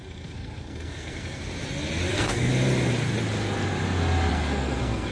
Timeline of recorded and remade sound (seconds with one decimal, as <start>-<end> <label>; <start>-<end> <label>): 0.0-1.4 remade; 1.4-2.1 recorded; 2.1-2.5 remade; 2.5-4.3 recorded; 4.3-5.1 remade